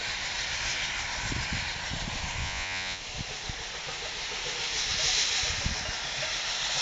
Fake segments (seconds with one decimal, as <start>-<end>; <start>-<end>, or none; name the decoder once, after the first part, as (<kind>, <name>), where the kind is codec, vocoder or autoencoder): 2.4-3.0 (vocoder, Vocos)